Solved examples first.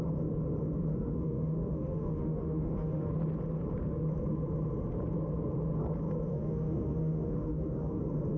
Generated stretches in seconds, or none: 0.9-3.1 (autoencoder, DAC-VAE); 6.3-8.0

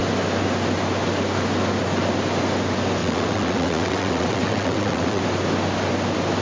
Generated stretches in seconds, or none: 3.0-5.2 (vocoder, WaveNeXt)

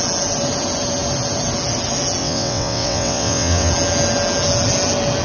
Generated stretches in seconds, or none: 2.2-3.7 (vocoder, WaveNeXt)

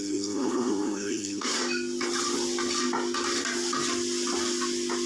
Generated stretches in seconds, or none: 0.0-1.6 (codec, SNAC)

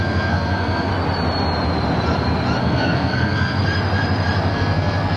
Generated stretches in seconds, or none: 0.0-0.9 (codec, SNAC); 2.6-3.6; 4.5-5.2

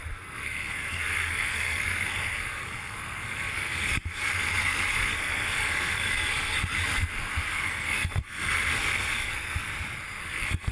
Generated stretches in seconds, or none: 0.0-9.7 (codec, SNAC); 10.2-10.7